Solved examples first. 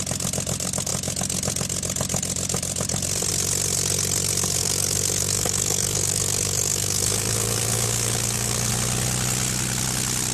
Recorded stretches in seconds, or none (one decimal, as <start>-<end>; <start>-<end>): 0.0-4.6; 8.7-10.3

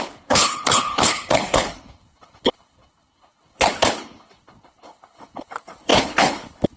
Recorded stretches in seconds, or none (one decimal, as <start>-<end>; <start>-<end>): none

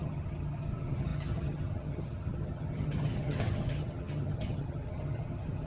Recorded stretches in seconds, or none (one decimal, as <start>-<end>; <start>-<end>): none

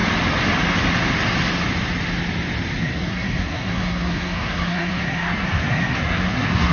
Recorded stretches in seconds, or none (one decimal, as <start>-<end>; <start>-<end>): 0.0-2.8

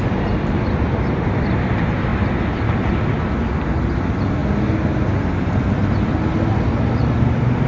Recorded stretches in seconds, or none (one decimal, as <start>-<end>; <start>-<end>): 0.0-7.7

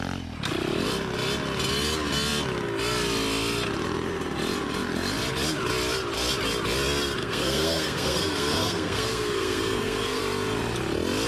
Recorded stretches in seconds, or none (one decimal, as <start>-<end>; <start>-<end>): 0.0-7.2; 10.2-11.3

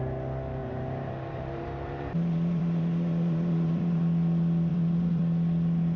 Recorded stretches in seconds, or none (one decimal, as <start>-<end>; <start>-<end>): 0.0-0.6; 4.0-4.7; 5.2-6.0

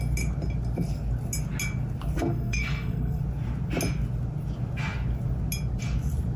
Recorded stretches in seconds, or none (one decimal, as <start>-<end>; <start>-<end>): 0.0-2.3; 3.2-6.4